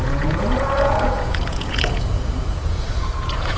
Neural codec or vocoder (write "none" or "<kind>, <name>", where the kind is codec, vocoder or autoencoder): vocoder, Vocos